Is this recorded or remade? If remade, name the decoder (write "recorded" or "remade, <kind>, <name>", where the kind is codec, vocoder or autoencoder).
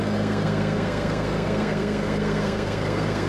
remade, codec, SNAC